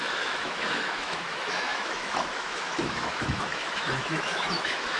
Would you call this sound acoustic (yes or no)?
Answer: no